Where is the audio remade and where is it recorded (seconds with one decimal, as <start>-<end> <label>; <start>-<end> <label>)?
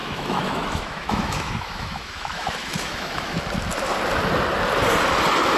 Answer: 0.0-3.4 remade; 3.4-5.6 recorded